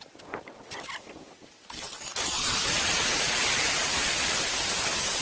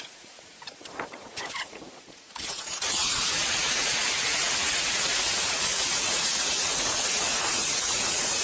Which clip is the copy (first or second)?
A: second